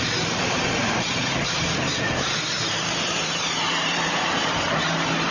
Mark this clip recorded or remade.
remade